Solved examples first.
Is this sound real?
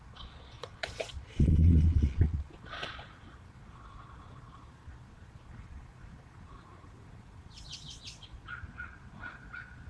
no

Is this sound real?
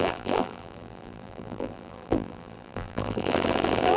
no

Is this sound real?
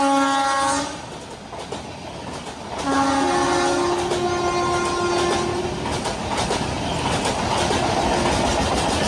yes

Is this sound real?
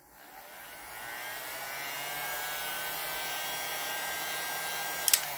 yes